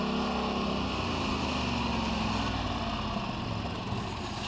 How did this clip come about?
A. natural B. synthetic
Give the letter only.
A